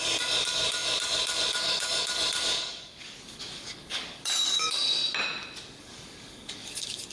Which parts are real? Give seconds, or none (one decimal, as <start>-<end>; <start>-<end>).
5.0-5.8